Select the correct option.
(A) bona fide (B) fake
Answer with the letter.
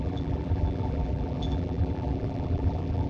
B